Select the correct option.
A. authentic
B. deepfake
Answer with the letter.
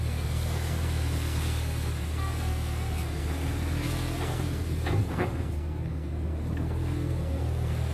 B